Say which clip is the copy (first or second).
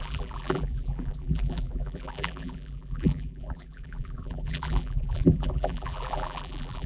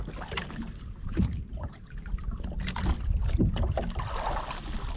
first